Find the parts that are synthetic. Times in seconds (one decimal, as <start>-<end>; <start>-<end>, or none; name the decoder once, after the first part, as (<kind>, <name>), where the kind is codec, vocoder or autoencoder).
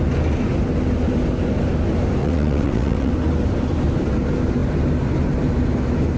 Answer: 2.2-3.1 (vocoder, WaveNeXt)